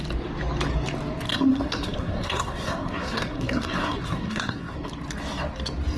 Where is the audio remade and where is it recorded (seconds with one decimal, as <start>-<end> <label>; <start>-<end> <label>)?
0.0-1.3 recorded; 1.3-4.9 remade; 4.9-6.0 recorded